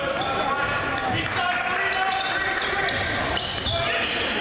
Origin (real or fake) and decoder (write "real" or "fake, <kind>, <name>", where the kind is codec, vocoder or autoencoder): real